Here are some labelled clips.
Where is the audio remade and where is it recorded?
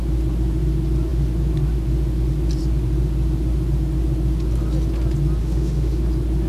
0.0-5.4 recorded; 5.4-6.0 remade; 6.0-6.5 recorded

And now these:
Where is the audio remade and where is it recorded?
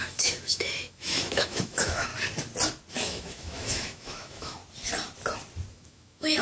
0.0-2.1 remade; 2.1-2.9 recorded; 2.9-4.6 remade; 4.6-5.7 recorded; 5.7-6.4 remade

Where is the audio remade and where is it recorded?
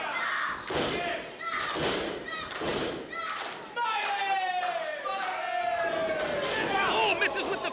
0.0-7.7 recorded